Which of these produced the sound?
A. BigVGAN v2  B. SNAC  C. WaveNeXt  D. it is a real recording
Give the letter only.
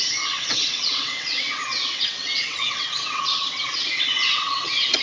C